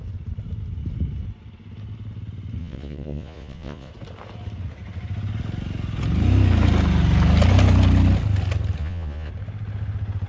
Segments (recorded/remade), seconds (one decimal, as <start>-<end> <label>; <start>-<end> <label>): 0.0-2.6 recorded; 2.6-3.9 remade; 3.9-8.8 recorded; 8.8-9.3 remade; 9.3-10.3 recorded